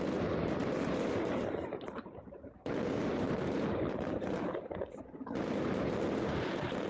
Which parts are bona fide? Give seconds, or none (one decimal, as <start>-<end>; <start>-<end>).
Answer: 0.0-6.9